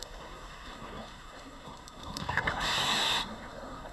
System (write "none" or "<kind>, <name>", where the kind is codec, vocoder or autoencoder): codec, SNAC